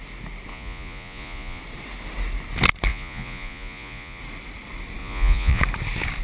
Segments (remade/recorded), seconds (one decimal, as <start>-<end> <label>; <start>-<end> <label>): 0.0-0.5 recorded; 0.5-1.6 remade; 1.6-2.9 recorded; 2.9-4.2 remade; 4.2-5.0 recorded; 5.0-5.6 remade; 5.6-6.2 recorded